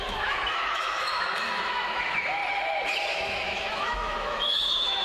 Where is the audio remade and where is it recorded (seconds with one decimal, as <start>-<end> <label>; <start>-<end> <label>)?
0.0-2.4 remade; 2.4-3.1 recorded; 3.1-5.0 remade